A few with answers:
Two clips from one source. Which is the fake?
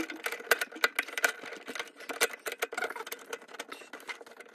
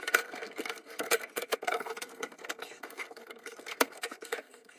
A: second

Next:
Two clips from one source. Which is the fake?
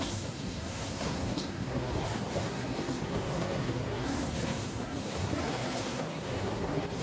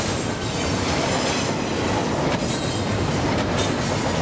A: first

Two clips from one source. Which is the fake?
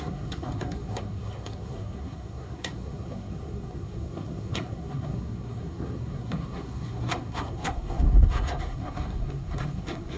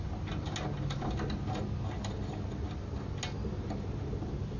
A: first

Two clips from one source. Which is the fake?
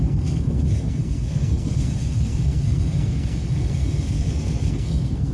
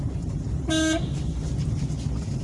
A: first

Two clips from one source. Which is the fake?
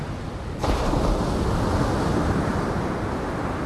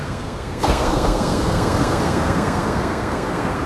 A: second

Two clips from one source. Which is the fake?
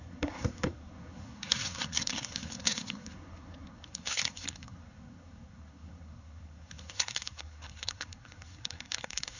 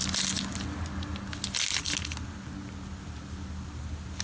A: first